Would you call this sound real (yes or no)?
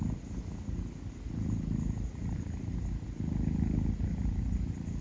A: yes